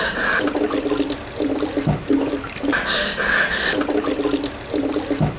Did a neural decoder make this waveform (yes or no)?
no